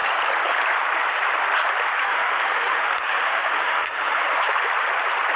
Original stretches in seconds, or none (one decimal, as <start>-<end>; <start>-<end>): 0.0-2.0; 4.2-5.4